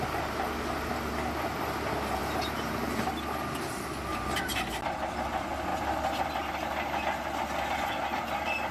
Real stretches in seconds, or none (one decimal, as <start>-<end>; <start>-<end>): 0.0-2.2; 3.2-4.1; 4.7-8.7